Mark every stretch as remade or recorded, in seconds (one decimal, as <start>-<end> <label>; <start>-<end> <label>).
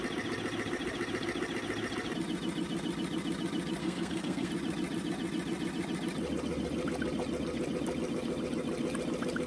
0.0-3.8 recorded; 3.8-4.5 remade; 4.5-9.5 recorded